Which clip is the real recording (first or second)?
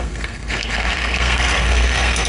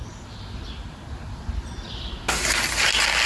second